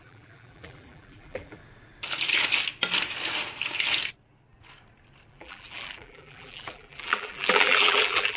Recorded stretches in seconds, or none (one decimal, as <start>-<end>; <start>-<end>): 1.6-5.3